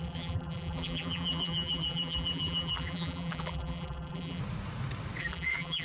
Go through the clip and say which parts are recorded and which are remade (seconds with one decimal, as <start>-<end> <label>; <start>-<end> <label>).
0.0-4.4 remade; 4.4-5.2 recorded; 5.2-5.8 remade